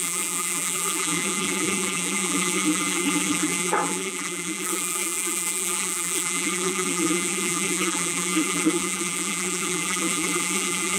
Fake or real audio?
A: fake